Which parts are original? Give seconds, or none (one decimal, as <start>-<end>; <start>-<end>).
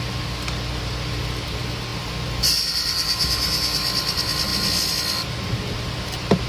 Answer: 0.0-6.5